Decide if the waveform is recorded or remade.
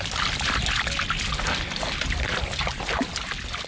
recorded